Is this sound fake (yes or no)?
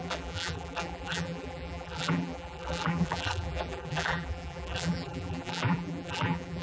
yes